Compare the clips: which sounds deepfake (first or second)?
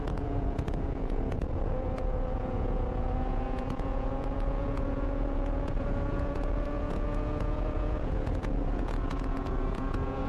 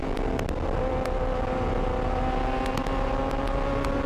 first